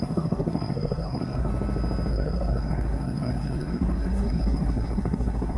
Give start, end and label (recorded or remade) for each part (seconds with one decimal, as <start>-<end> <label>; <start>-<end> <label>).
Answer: 0.0-1.5 remade; 1.5-2.1 recorded; 2.1-5.6 remade